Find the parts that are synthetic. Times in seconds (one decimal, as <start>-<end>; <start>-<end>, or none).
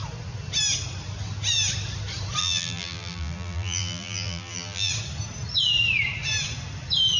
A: 2.4-4.9